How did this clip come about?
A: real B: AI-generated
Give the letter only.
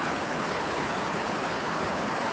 B